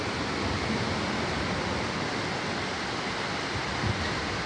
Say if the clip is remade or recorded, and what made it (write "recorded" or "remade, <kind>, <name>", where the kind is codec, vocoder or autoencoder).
recorded